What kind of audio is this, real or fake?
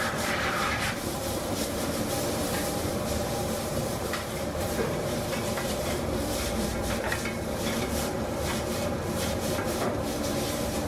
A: fake